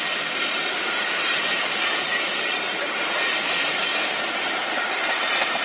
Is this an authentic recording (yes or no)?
no